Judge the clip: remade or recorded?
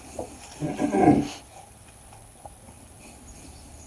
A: recorded